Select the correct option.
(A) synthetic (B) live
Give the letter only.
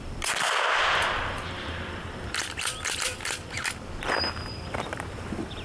A